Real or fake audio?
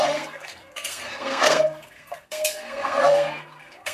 fake